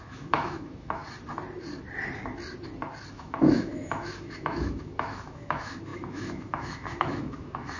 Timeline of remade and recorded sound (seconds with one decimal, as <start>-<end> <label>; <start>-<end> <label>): 0.0-1.0 remade; 1.0-3.1 recorded; 3.1-7.8 remade